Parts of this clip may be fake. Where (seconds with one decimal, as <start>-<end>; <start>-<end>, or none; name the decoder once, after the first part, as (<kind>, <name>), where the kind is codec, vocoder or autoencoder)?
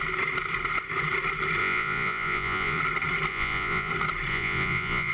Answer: 1.6-2.8 (vocoder, Vocos); 3.3-3.9; 4.3-5.1